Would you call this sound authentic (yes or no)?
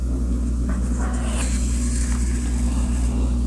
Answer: yes